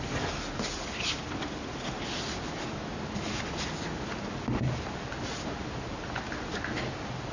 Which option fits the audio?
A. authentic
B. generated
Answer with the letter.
A